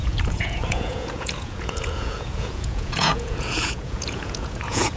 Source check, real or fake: fake